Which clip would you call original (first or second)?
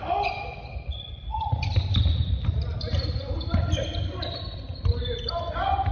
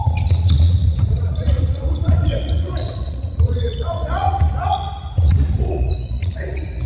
first